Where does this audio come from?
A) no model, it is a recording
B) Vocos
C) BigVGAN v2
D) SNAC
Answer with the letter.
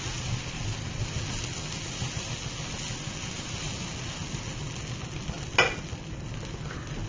A